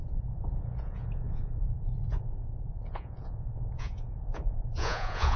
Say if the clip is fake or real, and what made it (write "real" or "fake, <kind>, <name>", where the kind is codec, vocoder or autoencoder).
fake, vocoder, Vocos